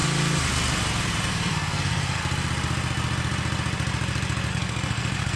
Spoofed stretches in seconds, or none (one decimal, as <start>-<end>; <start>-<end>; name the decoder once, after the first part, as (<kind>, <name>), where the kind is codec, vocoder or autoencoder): 1.3-2.2 (codec, SNAC); 4.5-5.4